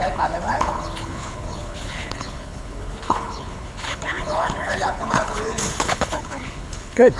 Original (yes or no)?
no